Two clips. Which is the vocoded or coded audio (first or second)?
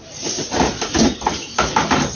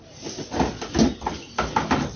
first